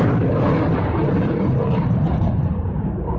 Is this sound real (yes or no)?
no